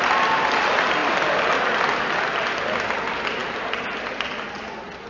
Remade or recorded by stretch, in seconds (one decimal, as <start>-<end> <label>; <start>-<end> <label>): 0.0-5.1 recorded